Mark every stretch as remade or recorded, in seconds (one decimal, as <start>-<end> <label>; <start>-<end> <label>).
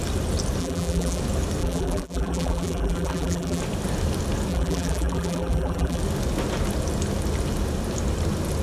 0.0-0.6 recorded; 0.6-1.2 remade; 1.2-1.6 recorded; 1.6-3.6 remade; 3.6-4.5 recorded; 4.5-6.0 remade; 6.0-8.6 recorded